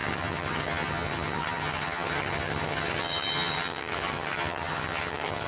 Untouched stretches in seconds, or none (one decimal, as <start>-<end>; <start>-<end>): none